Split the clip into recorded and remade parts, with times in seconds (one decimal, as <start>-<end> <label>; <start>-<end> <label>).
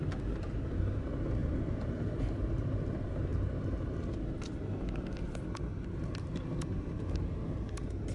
0.0-1.4 recorded; 1.4-2.7 remade; 2.7-8.1 recorded